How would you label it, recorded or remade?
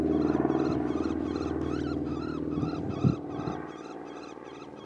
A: recorded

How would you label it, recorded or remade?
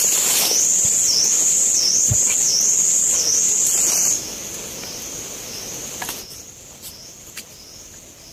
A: recorded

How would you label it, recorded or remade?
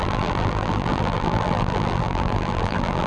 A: remade